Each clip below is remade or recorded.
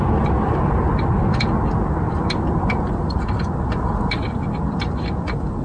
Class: recorded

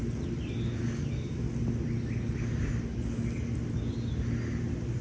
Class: recorded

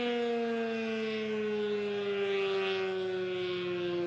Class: recorded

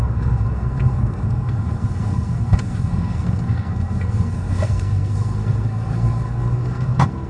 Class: remade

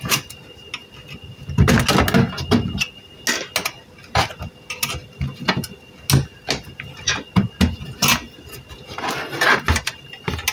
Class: recorded